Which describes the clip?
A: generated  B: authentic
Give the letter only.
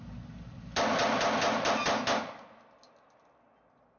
B